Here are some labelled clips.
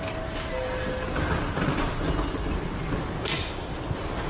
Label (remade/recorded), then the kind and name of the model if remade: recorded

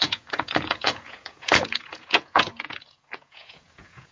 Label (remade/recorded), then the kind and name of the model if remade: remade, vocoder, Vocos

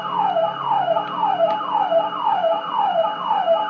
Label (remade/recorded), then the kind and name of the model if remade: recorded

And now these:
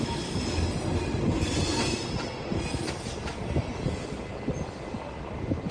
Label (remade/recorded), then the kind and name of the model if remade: recorded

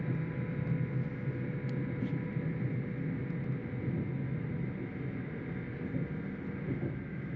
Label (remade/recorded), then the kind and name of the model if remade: recorded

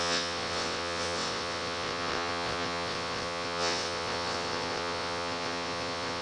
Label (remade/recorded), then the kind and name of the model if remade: remade, vocoder, WaveNeXt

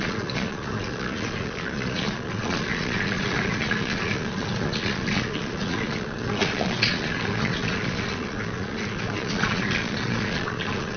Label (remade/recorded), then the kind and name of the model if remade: remade, vocoder, Vocos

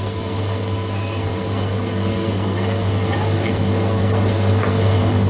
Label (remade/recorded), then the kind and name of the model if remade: remade, codec, SNAC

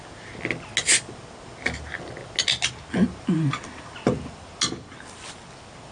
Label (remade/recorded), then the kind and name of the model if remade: recorded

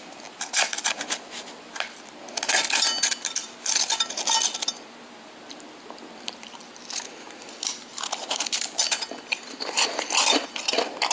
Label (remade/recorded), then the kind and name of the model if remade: recorded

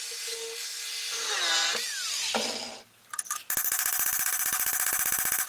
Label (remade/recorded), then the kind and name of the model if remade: recorded